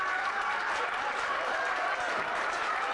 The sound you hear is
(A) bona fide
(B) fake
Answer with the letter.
A